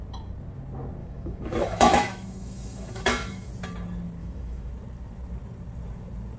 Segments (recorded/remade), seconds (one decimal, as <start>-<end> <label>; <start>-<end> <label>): 0.0-1.0 recorded; 1.0-3.5 remade; 3.5-4.2 recorded; 4.2-4.7 remade; 4.7-6.4 recorded

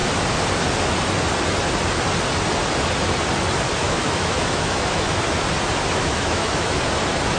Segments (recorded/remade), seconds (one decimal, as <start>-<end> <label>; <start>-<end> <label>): 0.0-3.8 recorded; 3.8-5.2 remade; 5.2-6.0 recorded; 6.0-6.8 remade; 6.8-7.4 recorded

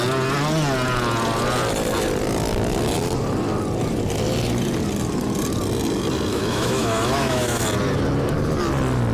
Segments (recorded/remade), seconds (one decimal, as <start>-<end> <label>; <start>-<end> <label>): 0.0-6.3 recorded; 6.3-7.6 remade; 7.6-9.1 recorded

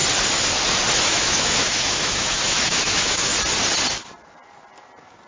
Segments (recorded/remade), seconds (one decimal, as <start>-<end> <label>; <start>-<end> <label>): 0.0-1.0 recorded; 1.0-3.3 remade; 3.3-5.3 recorded

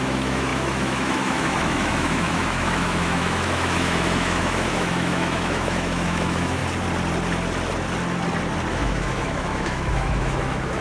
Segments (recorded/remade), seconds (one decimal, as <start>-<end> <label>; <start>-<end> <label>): 0.0-6.6 remade; 6.6-8.7 recorded; 8.7-10.8 remade